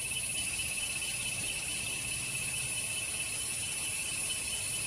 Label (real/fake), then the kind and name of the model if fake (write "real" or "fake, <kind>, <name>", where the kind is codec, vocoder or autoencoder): real